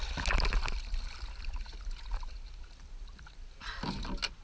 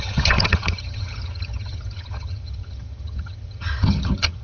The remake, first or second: second